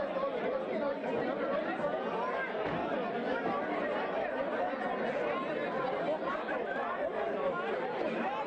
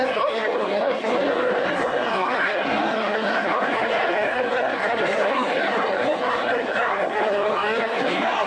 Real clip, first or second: first